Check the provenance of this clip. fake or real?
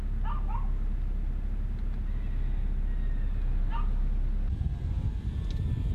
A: real